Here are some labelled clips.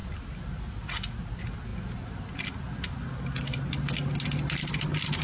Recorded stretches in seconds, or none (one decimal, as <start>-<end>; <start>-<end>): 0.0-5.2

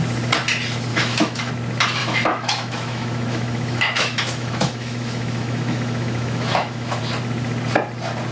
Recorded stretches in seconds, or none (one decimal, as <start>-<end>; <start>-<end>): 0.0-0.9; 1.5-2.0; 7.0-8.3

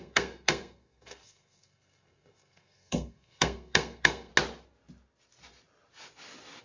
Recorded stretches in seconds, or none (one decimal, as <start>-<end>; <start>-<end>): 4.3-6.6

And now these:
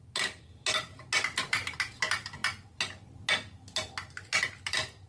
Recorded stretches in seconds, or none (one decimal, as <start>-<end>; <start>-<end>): 0.0-5.1

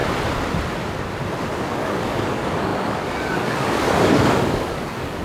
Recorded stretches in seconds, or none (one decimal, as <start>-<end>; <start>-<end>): 0.0-1.6

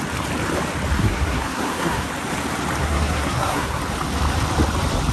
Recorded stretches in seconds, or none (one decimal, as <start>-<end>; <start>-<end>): 0.0-1.0; 2.1-2.8; 3.8-5.1